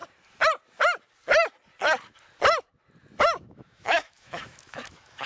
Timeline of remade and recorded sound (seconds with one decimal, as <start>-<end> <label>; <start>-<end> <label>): 0.0-3.2 recorded; 3.2-5.3 remade